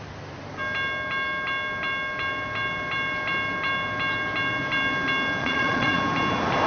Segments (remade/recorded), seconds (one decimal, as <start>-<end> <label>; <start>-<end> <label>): 0.0-5.4 recorded; 5.4-6.0 remade; 6.0-6.7 recorded